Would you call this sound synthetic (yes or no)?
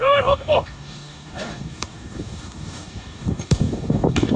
yes